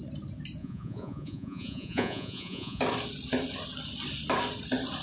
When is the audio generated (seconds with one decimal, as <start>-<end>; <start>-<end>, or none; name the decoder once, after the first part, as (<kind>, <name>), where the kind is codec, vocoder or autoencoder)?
0.6-2.8 (vocoder, Vocos)

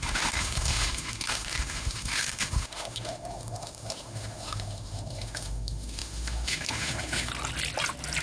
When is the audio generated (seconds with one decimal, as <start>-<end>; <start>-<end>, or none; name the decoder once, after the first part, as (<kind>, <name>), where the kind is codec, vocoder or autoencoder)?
0.0-7.3 (autoencoder, DAC-VAE)

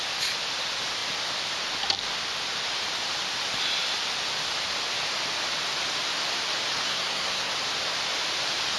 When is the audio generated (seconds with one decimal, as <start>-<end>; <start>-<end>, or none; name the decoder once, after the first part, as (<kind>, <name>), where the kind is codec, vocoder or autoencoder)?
6.8-7.5 (codec, SNAC)